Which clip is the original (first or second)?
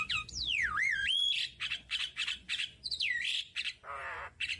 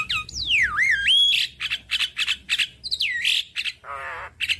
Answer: second